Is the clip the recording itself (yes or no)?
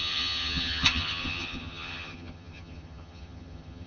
no